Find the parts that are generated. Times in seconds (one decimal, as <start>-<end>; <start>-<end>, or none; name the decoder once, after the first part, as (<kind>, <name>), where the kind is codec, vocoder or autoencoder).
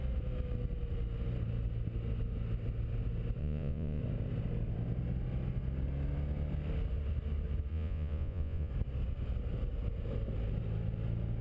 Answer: 3.4-4.0 (vocoder, Vocos); 7.7-8.7